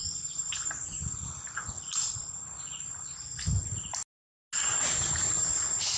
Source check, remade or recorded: recorded